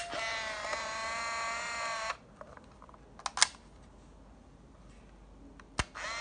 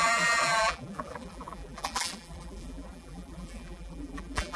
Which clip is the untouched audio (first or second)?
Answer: first